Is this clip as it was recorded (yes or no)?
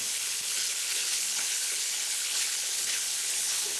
no